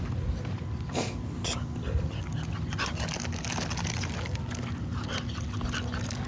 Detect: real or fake real